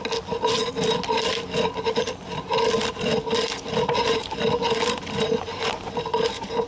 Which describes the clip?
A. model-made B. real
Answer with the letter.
B